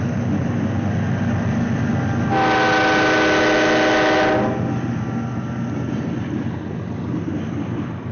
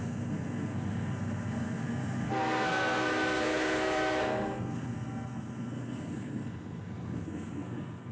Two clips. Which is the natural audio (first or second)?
first